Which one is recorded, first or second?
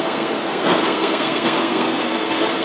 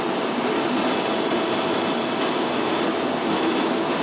second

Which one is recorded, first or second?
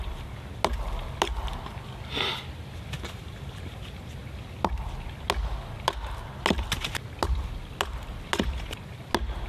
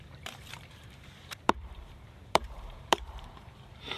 first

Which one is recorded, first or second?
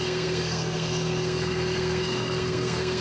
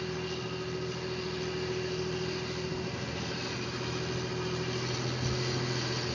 second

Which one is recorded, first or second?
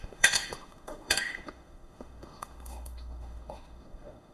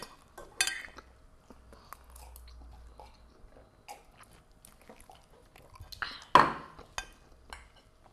second